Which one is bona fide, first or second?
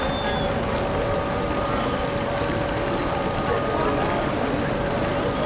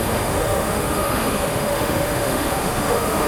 first